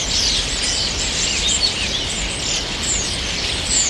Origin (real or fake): real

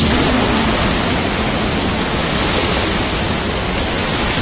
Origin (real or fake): real